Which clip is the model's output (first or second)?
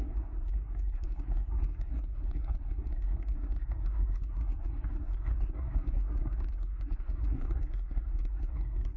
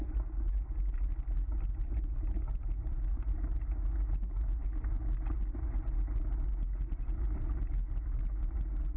first